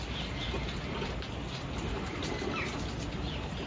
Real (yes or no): yes